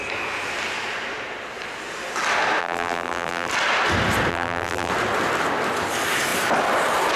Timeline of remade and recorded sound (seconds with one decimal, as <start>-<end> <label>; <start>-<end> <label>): 0.0-2.6 recorded; 2.6-3.5 remade; 3.5-4.3 recorded; 4.3-4.9 remade; 4.9-7.2 recorded